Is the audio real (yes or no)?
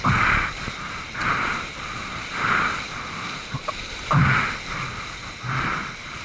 no